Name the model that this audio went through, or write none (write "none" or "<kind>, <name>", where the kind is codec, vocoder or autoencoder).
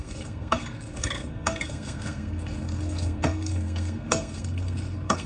codec, SNAC